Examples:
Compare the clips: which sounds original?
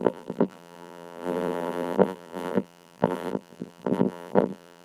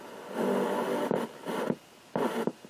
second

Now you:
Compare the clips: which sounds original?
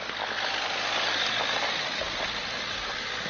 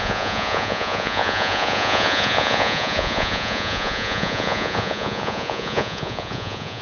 first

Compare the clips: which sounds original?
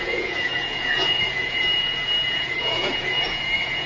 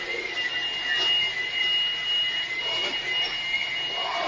second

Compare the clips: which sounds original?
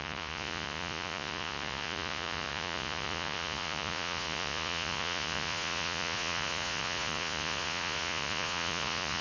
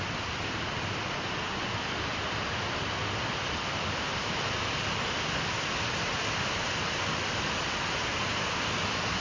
second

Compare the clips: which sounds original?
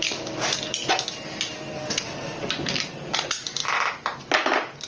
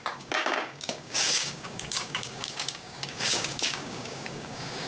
first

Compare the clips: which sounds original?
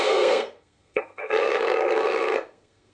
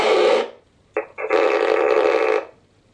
second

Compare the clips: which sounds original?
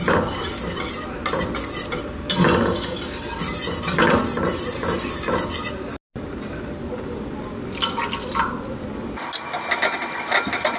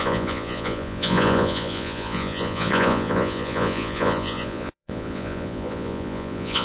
first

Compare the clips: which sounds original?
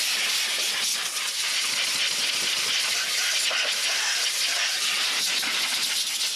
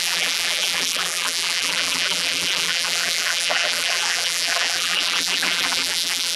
first